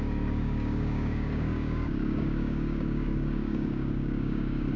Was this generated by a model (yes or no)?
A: yes